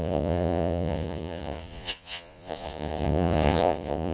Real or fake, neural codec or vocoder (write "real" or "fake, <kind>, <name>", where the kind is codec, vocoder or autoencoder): fake, vocoder, Vocos